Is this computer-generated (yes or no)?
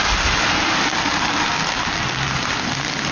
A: no